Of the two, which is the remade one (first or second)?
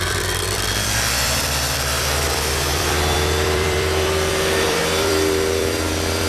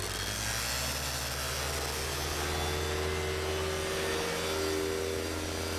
first